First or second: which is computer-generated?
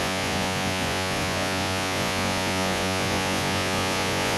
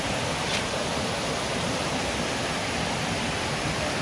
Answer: first